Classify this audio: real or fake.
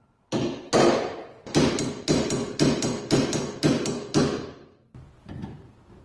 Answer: real